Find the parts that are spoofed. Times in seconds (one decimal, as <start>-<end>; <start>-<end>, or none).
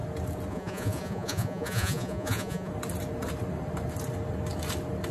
0.5-2.7